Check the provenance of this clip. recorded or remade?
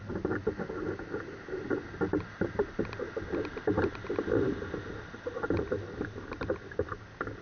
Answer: recorded